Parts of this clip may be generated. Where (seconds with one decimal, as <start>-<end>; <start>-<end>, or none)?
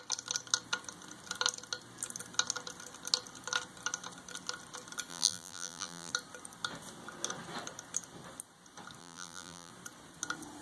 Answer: 5.1-6.1; 9.0-9.7